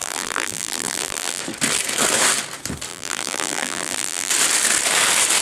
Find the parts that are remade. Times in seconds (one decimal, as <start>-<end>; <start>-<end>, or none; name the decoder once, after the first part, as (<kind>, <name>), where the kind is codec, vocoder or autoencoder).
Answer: 0.0-1.4 (vocoder, BigVGAN v2); 2.9-4.3